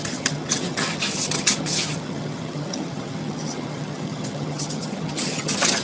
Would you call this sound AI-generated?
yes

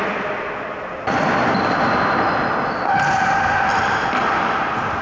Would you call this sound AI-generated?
no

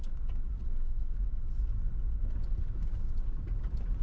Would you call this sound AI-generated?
no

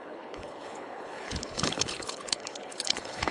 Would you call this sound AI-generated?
yes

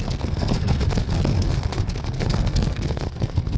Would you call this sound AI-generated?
yes